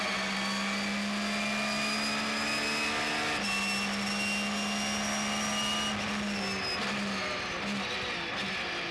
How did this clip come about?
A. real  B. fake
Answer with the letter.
A